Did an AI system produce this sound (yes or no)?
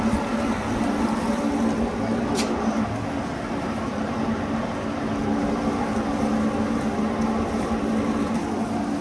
no